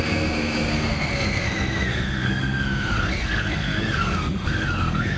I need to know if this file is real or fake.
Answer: fake